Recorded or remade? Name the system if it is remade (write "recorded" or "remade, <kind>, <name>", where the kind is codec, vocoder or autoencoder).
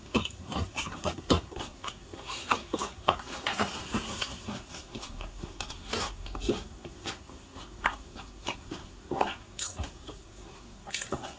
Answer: remade, codec, SNAC